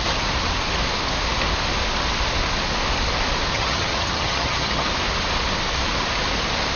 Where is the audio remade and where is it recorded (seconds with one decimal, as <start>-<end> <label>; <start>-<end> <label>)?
0.0-3.5 recorded; 3.5-4.9 remade; 4.9-6.8 recorded